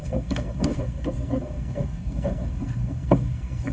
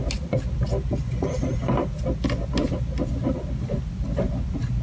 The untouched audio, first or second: second